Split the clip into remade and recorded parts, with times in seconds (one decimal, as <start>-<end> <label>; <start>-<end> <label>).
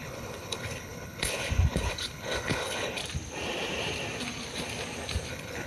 0.0-3.0 remade; 3.0-5.3 recorded; 5.3-5.7 remade